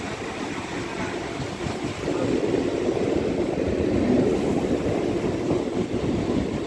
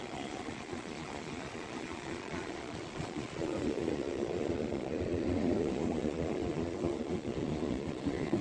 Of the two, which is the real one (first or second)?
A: first